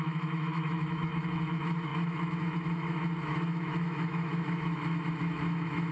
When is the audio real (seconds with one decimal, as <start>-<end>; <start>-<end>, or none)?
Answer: none

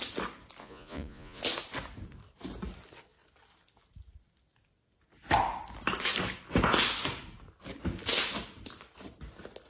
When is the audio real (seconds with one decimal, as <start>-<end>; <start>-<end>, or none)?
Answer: 0.0-0.6; 1.4-9.7

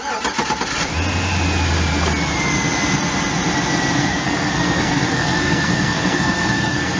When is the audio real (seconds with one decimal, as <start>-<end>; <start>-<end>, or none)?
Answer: 0.0-4.0

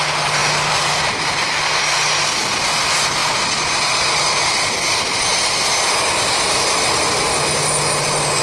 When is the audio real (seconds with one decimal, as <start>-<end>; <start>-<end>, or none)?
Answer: 0.0-8.4

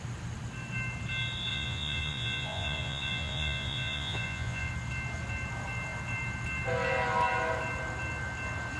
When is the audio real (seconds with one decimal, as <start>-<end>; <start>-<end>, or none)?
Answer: 0.0-1.5; 4.7-8.8

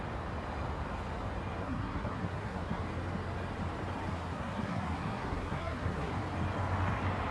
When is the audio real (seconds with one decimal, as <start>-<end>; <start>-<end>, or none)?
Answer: 0.0-1.6; 2.8-4.1; 6.1-7.3